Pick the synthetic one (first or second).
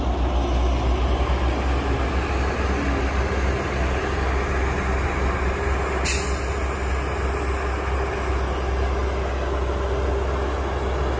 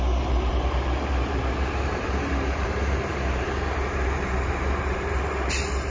second